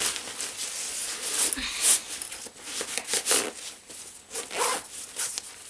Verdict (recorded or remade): recorded